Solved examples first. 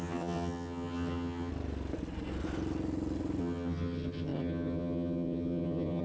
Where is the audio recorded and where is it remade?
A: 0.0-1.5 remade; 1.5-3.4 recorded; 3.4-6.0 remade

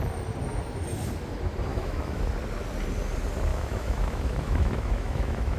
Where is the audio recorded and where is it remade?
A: 0.0-1.7 recorded; 1.7-2.2 remade; 2.2-3.5 recorded; 3.5-5.6 remade

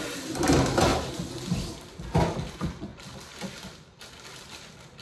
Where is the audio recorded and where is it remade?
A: 0.0-5.0 recorded

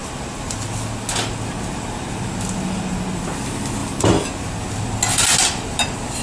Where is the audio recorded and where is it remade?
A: 0.0-6.2 recorded